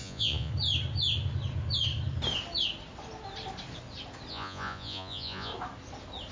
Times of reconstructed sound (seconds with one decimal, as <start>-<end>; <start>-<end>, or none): 0.0-0.5; 4.3-5.5